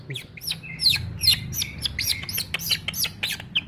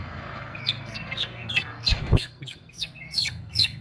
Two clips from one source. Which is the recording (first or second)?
first